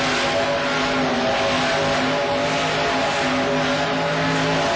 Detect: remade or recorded recorded